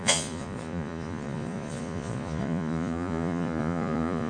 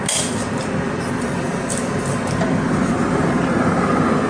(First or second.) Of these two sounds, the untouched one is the second